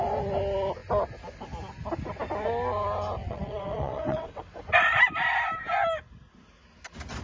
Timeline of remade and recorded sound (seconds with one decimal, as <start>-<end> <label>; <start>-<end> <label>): 0.0-3.2 recorded; 3.2-4.4 remade; 4.4-7.2 recorded

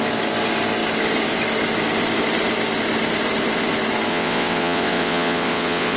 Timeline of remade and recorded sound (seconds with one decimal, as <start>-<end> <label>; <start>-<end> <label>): 0.0-4.1 recorded; 4.1-6.0 remade

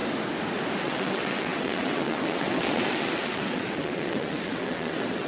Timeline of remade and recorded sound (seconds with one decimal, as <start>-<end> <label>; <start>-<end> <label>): 0.0-0.8 recorded; 0.8-5.3 remade

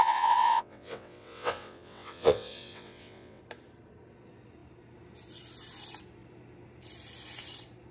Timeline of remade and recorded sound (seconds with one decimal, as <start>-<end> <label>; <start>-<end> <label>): 0.0-3.4 remade; 3.4-7.9 recorded